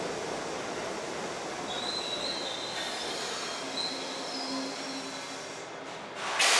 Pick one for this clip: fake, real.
real